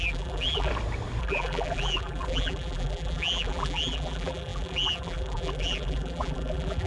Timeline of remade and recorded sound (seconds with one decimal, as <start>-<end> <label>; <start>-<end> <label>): 0.0-0.7 remade; 0.7-1.2 recorded; 1.2-6.9 remade